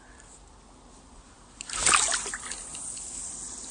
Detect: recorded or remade recorded